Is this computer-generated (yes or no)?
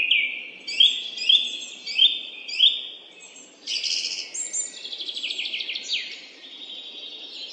no